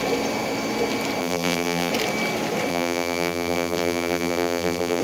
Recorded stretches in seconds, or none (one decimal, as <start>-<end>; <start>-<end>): 0.0-1.2; 1.9-2.7